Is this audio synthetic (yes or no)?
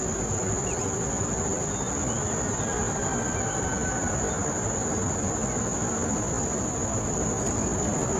no